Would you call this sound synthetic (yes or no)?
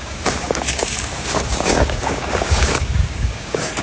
yes